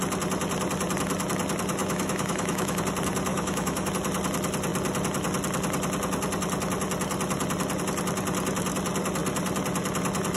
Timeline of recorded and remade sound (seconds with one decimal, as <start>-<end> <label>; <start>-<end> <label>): 0.0-1.8 recorded; 1.8-2.8 remade; 2.8-3.3 recorded; 3.3-3.9 remade; 3.9-10.4 recorded